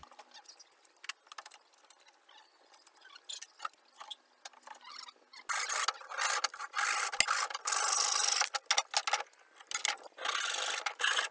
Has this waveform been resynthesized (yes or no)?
no